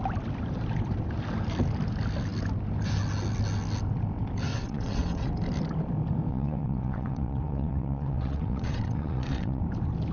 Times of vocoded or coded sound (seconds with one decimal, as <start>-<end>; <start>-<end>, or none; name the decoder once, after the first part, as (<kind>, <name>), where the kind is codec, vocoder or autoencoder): 4.5-5.3 (vocoder, WaveNeXt); 6.3-9.6